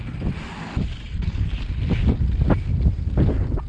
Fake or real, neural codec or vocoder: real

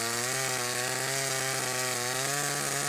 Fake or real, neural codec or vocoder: real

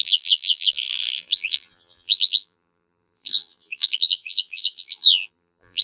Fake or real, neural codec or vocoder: fake, vocoder, BigVGAN v2